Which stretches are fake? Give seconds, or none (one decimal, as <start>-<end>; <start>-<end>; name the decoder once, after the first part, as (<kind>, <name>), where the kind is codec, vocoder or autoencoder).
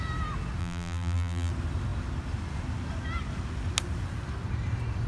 0.6-1.5 (vocoder, BigVGAN v2)